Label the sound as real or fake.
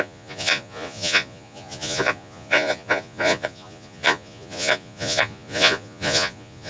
fake